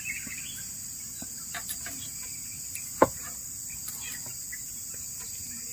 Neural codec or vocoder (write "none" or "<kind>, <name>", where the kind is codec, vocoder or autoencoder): none